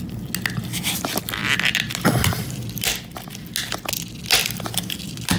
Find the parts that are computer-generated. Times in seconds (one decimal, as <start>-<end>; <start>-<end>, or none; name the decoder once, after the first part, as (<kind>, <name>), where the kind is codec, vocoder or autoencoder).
1.4-3.0 (vocoder, BigVGAN v2); 4.4-5.4